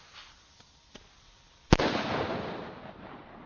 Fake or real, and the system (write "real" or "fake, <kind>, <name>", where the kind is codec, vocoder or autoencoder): real